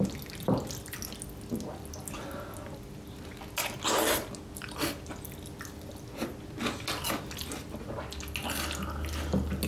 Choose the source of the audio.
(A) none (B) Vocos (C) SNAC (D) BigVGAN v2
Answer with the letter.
A